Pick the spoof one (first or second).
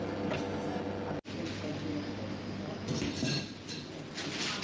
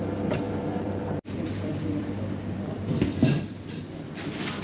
second